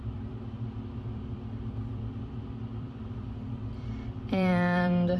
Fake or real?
fake